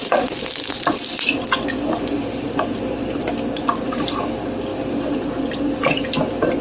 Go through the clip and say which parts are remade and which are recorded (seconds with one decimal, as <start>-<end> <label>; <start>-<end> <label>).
0.0-6.6 recorded

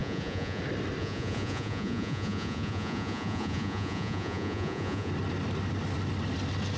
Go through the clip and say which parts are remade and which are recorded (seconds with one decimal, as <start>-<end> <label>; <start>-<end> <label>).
0.0-0.6 remade; 0.6-1.0 recorded; 1.0-5.1 remade; 5.1-6.8 recorded